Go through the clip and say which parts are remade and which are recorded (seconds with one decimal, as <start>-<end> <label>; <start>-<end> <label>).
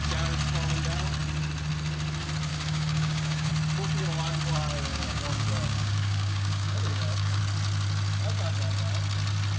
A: 0.0-2.5 recorded; 2.5-3.5 remade; 3.5-4.9 recorded; 4.9-7.4 remade; 7.4-9.6 recorded